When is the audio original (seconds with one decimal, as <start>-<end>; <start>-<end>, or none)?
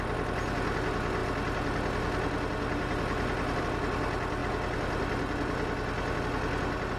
0.0-7.0